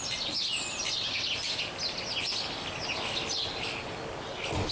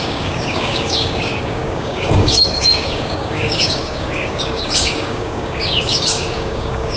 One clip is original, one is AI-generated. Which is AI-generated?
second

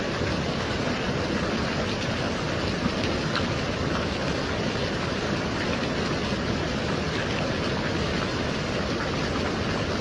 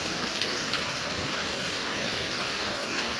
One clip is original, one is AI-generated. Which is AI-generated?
second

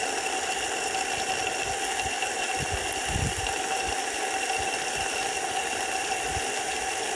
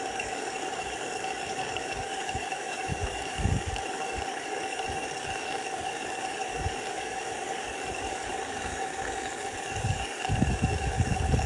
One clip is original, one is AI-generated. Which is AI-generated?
second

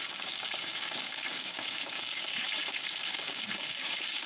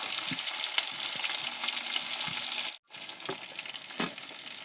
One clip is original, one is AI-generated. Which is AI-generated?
first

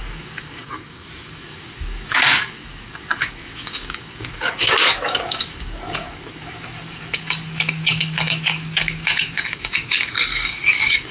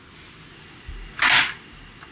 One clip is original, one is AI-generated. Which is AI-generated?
first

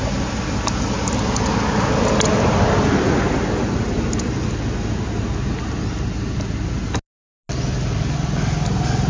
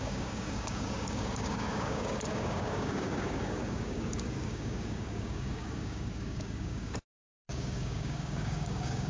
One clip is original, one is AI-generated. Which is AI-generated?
second